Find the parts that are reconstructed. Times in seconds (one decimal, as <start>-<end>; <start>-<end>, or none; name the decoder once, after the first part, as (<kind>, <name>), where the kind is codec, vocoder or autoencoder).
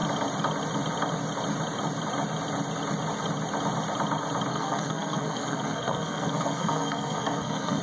4.5-7.8 (codec, SNAC)